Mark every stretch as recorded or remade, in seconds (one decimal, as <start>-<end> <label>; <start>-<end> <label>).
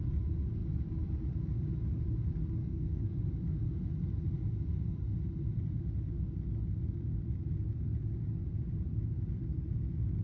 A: 0.0-2.6 recorded; 2.6-3.2 remade; 3.2-10.2 recorded